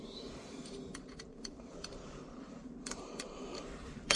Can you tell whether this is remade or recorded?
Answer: remade